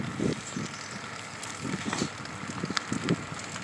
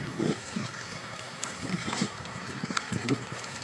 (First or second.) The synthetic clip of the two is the second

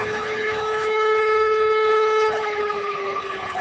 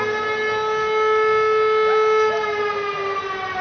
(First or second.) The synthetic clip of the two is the first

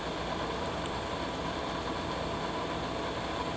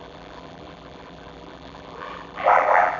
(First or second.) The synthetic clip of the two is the second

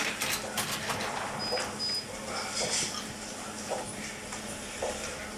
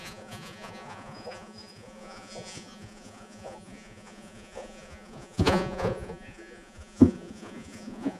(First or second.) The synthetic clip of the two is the second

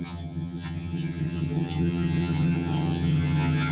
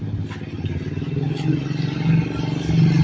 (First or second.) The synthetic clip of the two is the first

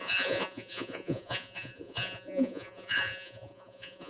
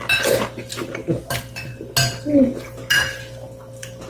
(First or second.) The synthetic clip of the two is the first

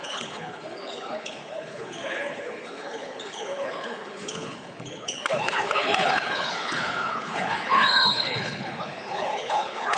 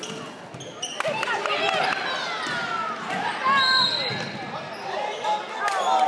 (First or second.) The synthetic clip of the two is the first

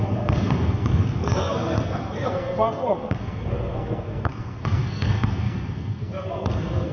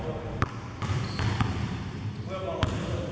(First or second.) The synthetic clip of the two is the first